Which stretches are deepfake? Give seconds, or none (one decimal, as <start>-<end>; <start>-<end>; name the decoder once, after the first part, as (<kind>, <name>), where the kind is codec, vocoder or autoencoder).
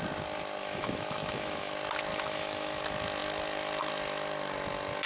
0.6-1.7 (autoencoder, DAC-VAE); 2.1-2.8